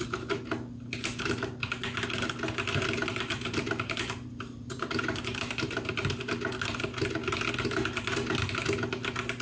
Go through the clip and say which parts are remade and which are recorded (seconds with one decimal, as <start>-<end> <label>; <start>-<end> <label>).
0.0-3.3 recorded; 3.3-6.0 remade; 6.0-9.4 recorded